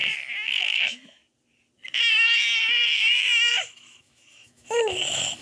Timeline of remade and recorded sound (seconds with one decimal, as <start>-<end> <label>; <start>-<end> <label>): 0.0-0.6 recorded; 0.6-1.2 remade; 1.2-2.1 recorded; 2.1-5.4 remade